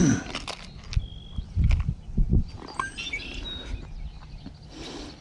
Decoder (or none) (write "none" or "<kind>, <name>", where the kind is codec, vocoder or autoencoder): none